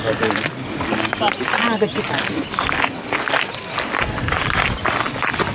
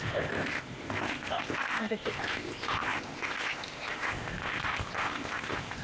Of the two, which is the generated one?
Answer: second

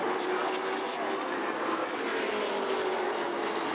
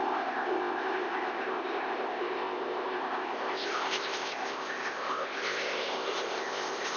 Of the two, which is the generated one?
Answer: second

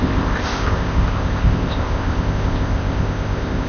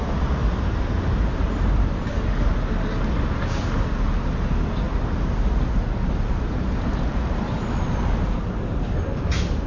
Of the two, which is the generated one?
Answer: first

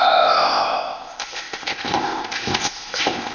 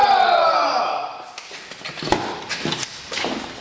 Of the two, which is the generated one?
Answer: first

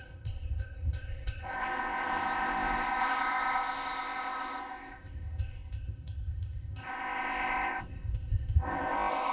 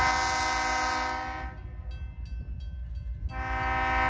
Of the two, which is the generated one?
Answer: first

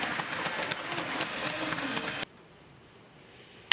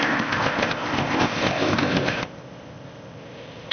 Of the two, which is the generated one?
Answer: second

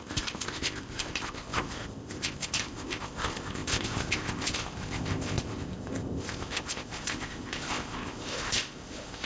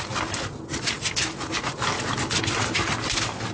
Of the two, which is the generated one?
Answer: first